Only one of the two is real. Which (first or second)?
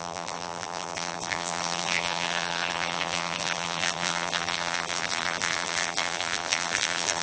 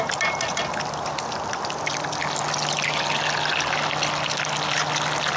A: second